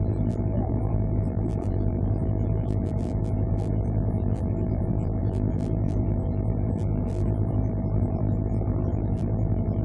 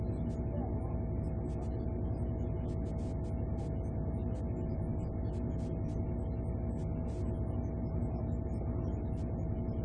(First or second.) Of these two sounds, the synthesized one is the first